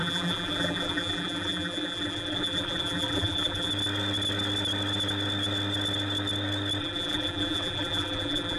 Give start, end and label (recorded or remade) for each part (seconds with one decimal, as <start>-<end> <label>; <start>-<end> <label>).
0.0-3.7 remade; 3.7-6.8 recorded; 6.8-8.6 remade